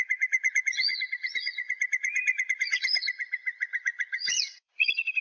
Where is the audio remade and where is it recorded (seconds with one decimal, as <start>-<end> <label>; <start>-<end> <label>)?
0.0-5.2 remade